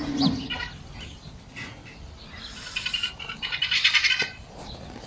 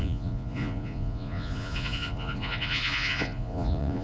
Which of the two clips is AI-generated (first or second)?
second